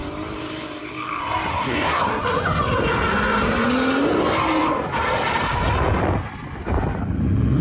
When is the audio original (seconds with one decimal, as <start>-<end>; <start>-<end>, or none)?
0.0-1.5; 2.2-7.6

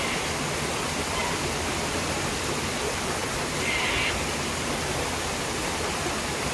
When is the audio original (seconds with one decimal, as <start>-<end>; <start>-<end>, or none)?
0.0-1.2; 2.0-6.5

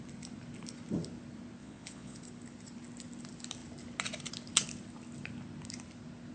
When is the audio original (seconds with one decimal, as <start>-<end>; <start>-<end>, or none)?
0.0-1.6; 2.2-6.3

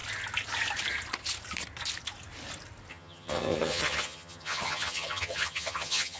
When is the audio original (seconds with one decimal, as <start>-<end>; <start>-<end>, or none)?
0.0-2.9

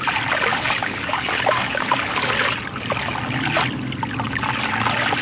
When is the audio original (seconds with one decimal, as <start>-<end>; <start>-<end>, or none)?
0.0-0.5; 2.3-5.2

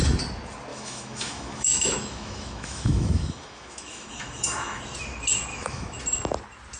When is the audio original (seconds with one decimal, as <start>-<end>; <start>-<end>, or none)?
0.0-0.7; 4.8-5.5; 6.0-6.8

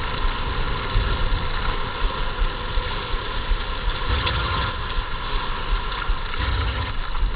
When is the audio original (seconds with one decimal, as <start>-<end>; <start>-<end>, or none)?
0.0-4.1; 4.7-6.4; 6.9-7.4

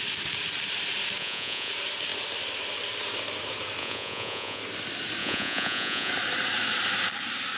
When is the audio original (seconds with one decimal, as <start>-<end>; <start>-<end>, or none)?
0.0-1.2; 1.7-3.8; 4.6-5.2; 6.1-7.6